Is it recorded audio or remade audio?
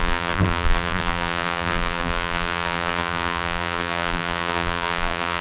remade